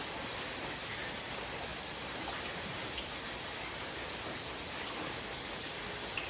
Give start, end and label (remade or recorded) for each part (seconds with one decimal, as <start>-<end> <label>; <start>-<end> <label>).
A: 0.0-6.3 recorded